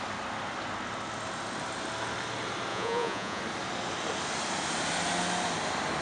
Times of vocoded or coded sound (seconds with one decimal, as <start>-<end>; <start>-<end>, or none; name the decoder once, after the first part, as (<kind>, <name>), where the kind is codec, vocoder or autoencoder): 2.7-3.4 (vocoder, Vocos)